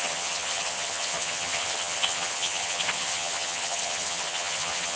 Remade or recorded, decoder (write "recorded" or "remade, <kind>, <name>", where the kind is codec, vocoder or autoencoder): remade, vocoder, HiFi-GAN